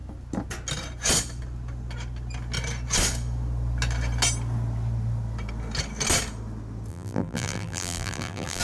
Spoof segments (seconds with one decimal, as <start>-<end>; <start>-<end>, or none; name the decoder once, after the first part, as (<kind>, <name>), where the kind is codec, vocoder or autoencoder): 6.9-8.6 (vocoder, BigVGAN v2)